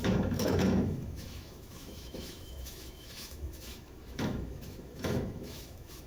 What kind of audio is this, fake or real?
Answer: fake